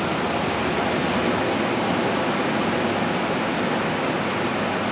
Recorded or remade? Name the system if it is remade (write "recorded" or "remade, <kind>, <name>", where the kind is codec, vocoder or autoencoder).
recorded